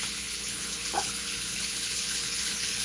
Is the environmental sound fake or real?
fake